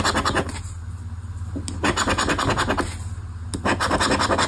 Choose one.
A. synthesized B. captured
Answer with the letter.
B